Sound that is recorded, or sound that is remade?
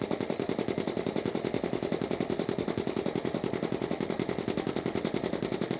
remade